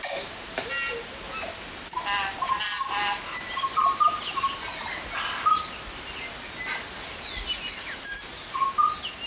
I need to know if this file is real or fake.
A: real